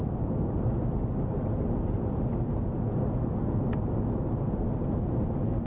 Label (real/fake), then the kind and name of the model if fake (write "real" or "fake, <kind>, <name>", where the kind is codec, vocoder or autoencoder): real